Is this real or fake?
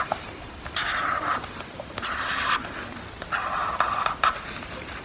real